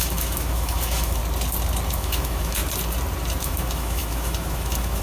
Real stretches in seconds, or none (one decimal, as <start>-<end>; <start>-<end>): 1.2-1.9; 2.6-3.4